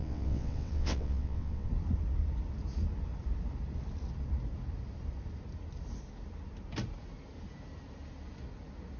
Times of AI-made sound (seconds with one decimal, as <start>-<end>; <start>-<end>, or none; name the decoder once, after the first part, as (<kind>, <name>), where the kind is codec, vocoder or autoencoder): 0.0-1.7 (vocoder, WaveNeXt)